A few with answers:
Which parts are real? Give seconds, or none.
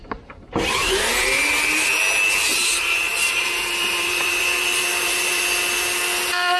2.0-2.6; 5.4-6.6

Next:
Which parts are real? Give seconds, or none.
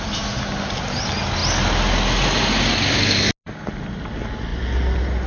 0.0-4.5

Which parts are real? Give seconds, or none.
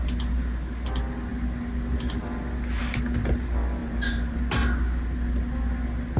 0.0-3.8; 4.4-6.2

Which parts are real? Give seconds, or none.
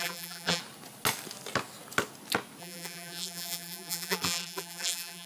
0.6-2.6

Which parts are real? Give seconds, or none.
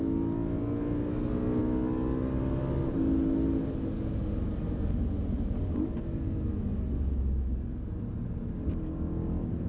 0.0-9.7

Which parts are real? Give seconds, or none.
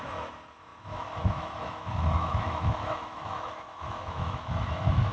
none